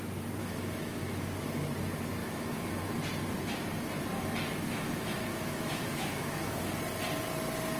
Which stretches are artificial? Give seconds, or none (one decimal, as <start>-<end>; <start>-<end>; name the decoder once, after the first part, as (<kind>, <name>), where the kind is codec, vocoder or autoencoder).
0.4-1.0 (autoencoder, DAC-VAE); 2.2-2.7; 5.3-6.6